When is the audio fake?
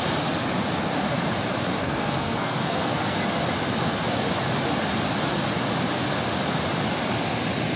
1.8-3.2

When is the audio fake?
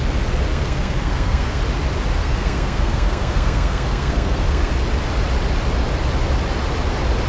0.5-1.6; 2.2-4.7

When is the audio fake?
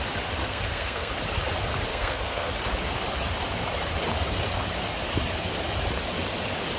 0.4-1.1; 1.9-2.5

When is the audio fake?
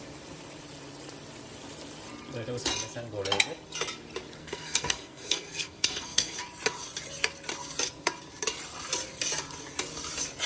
4.4-6.4